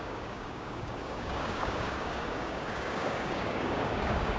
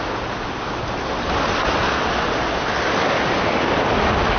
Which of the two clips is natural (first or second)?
second